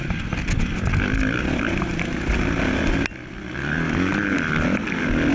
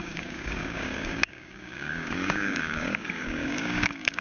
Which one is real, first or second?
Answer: first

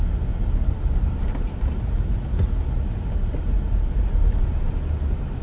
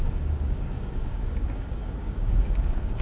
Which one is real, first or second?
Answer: first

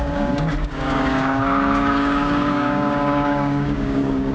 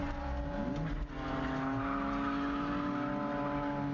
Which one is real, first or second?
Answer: second